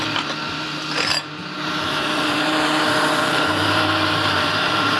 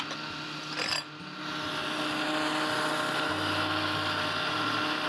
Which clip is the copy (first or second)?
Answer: first